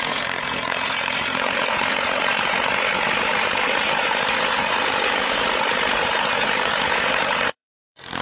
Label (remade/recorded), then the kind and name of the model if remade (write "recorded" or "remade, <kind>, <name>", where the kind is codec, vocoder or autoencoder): remade, vocoder, Vocos